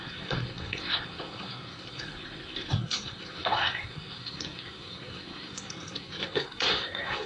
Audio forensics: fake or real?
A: fake